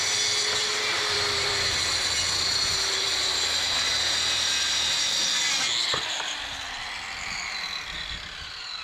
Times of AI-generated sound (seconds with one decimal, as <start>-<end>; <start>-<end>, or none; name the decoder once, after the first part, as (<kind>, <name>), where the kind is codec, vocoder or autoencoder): 0.6-5.2 (vocoder, BigVGAN v2)